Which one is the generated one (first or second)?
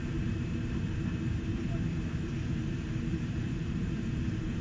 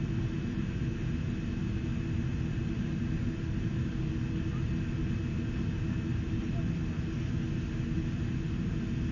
first